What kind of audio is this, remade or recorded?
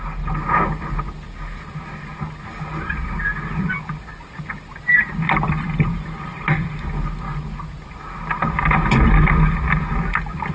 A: recorded